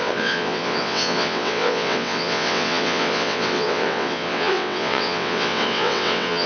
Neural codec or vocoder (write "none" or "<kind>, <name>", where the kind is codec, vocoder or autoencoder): vocoder, WaveNeXt